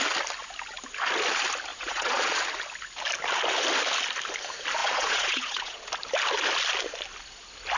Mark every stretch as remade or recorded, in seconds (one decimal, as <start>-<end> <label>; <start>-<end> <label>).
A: 0.0-1.7 recorded; 1.7-2.4 remade; 2.4-4.8 recorded; 4.8-5.9 remade; 5.9-7.8 recorded